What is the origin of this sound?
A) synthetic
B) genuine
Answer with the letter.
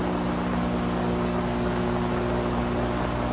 B